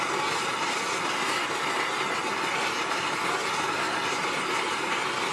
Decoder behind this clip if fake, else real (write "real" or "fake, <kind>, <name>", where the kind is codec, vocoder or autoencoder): real